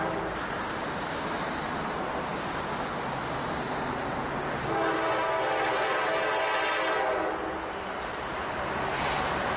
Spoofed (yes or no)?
no